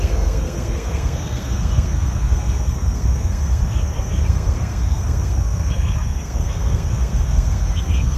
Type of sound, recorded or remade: remade